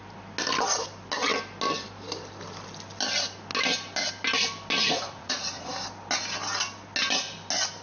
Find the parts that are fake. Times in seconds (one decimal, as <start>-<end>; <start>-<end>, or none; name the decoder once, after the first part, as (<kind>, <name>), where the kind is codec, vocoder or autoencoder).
4.8-5.7 (vocoder, Vocos)

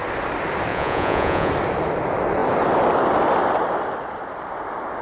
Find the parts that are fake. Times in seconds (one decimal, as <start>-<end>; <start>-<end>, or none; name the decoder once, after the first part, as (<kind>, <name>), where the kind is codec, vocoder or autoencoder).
0.7-1.5 (vocoder, Vocos)

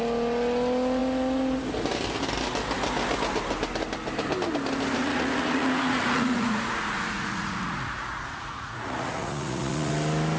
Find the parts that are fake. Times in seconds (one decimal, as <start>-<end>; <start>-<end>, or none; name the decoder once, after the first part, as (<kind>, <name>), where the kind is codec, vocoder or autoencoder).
5.0-9.9 (vocoder, Vocos)

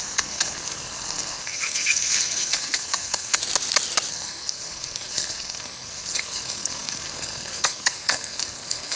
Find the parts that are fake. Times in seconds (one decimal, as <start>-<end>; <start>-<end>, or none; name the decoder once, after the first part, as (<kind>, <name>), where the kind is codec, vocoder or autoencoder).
0.0-3.4 (codec, SNAC); 4.1-9.0

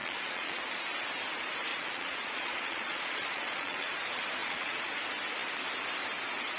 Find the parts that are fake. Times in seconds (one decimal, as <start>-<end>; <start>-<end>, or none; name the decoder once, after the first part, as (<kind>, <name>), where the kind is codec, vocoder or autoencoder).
0.0-0.6 (vocoder, Vocos); 1.7-3.9; 4.4-4.9

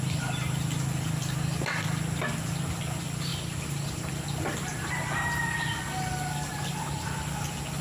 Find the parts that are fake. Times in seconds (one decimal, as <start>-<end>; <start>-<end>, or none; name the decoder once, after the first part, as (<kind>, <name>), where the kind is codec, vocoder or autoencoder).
3.3-4.1 (vocoder, BigVGAN v2); 4.7-5.7; 6.5-7.1

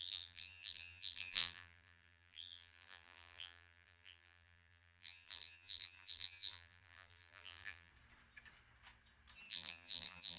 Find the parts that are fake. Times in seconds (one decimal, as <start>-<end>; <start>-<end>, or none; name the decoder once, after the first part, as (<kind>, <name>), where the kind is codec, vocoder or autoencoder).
0.0-7.9 (vocoder, BigVGAN v2); 9.5-10.4

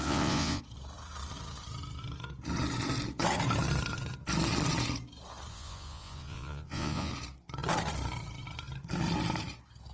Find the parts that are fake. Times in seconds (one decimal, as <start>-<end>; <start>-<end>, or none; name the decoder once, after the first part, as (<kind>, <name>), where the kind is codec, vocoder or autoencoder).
0.0-0.6 (vocoder, Vocos); 5.5-7.1